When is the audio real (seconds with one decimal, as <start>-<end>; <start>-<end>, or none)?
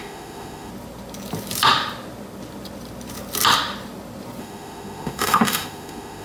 0.7-4.4